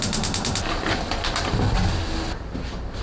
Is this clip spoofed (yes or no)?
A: no